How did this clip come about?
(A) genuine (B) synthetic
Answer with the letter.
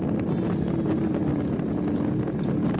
A